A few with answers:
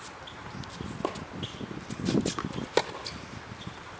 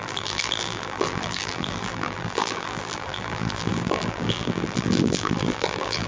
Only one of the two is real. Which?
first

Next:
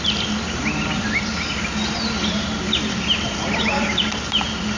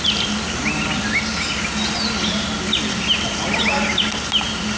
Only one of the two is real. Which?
second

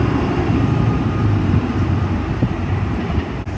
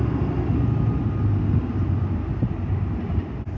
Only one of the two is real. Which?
second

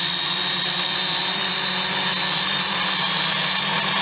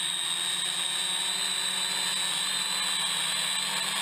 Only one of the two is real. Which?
second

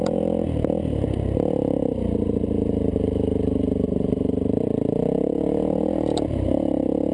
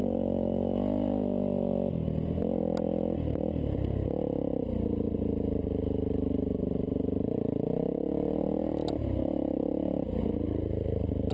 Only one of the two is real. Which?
second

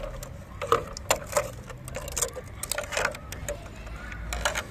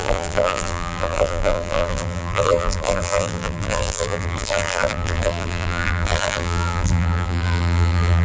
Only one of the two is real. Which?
first